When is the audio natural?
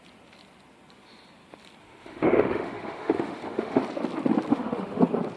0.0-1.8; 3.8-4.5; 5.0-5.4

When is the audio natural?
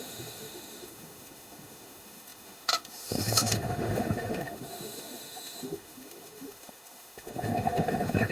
none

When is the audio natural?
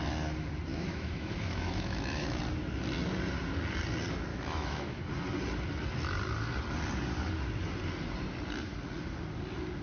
0.0-0.7; 2.4-4.3; 5.0-9.8